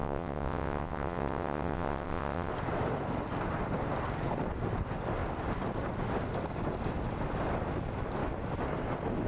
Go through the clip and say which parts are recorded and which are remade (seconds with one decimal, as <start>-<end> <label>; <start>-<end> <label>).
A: 0.0-2.5 remade; 2.5-9.3 recorded